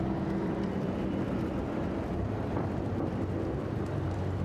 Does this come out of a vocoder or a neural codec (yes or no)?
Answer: yes